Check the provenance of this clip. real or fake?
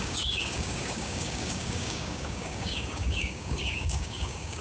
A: fake